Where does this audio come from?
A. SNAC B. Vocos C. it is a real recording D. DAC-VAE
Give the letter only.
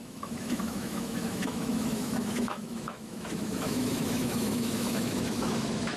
D